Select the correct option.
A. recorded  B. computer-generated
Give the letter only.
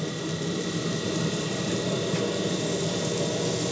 A